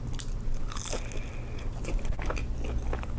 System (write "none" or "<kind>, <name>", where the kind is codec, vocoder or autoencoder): none